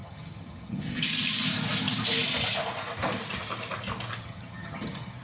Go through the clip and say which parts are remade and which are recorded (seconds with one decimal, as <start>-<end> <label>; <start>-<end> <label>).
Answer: 0.0-1.0 remade; 1.0-4.2 recorded; 4.2-5.2 remade